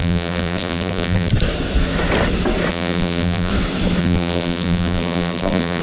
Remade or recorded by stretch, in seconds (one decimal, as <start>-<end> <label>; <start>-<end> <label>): 0.0-1.3 remade; 1.3-2.7 recorded; 2.7-3.5 remade; 3.5-4.0 recorded; 4.0-5.8 remade